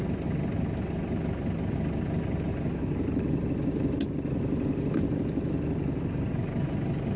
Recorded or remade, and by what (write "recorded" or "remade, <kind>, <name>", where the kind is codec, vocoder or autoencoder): recorded